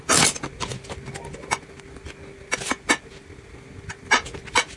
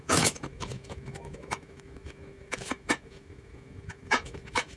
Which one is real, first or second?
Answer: first